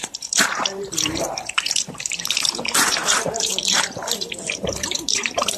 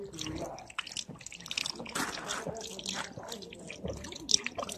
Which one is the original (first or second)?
second